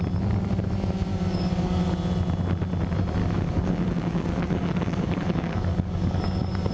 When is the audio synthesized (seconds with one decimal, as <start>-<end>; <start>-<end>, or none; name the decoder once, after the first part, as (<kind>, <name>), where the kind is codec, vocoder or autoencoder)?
1.1-1.8 (codec, DAC); 3.2-6.7